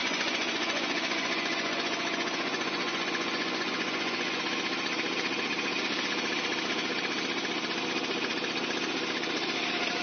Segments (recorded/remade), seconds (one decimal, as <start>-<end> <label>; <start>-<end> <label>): 0.0-4.4 remade; 4.4-10.0 recorded

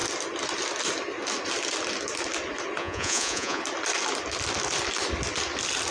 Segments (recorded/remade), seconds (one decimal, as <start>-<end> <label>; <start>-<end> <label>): 0.0-2.8 recorded; 2.8-3.6 remade; 3.6-5.9 recorded

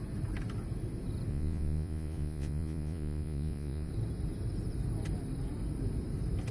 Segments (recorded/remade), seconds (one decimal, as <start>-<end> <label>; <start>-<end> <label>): 0.0-1.3 recorded; 1.3-3.9 remade; 3.9-6.5 recorded

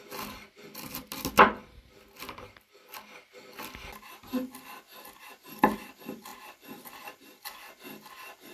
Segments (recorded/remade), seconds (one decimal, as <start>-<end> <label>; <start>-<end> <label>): 0.0-8.5 recorded

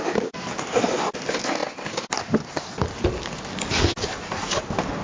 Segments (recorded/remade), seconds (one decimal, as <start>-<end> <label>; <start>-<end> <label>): 0.0-5.0 recorded

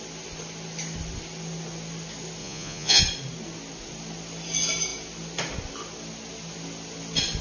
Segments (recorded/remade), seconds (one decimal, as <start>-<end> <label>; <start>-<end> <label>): 0.0-2.4 recorded; 2.4-3.0 remade; 3.0-7.4 recorded

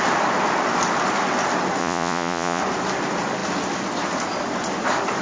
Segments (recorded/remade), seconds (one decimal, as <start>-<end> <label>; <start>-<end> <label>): 0.0-1.8 recorded; 1.8-2.6 remade; 2.6-5.2 recorded